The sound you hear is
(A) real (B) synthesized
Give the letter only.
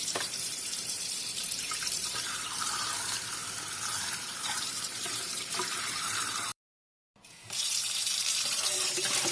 B